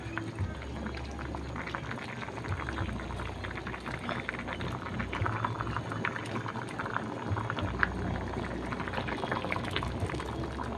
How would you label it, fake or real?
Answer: real